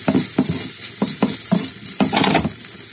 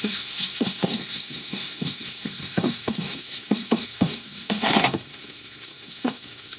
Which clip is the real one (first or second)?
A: first